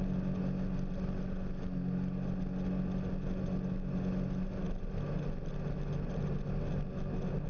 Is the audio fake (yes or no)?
no